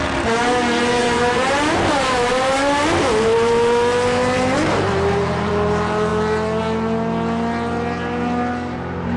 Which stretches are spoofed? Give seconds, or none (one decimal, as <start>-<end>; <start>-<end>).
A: 1.0-5.5